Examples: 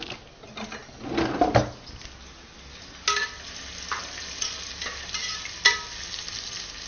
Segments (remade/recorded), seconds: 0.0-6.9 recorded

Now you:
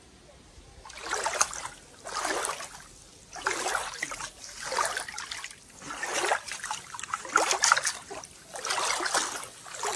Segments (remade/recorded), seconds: 0.0-10.0 recorded

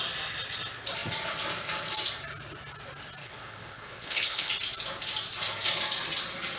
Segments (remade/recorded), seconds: 0.0-3.2 recorded; 3.2-4.5 remade; 4.5-6.6 recorded